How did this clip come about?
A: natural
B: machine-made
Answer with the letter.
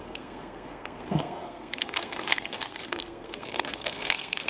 B